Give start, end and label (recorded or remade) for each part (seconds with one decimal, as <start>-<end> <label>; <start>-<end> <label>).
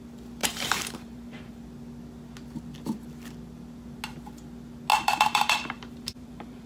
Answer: 0.0-0.4 recorded; 0.4-1.6 remade; 1.6-4.9 recorded; 4.9-6.7 remade